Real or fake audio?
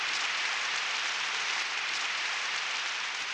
fake